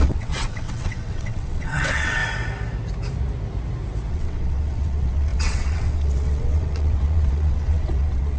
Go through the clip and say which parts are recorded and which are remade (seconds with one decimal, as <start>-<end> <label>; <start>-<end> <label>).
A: 0.0-2.2 remade; 2.2-4.1 recorded; 4.1-8.4 remade